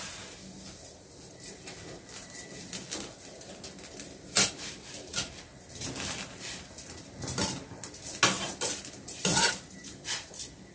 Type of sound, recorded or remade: recorded